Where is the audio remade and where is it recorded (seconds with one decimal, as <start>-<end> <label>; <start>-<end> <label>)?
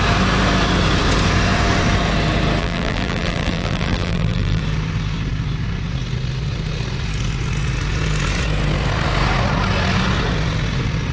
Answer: 0.0-2.6 recorded; 2.6-4.6 remade; 4.6-11.1 recorded